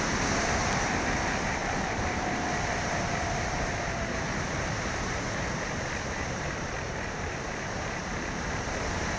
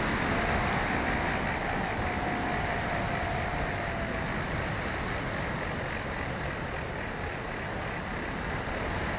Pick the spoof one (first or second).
first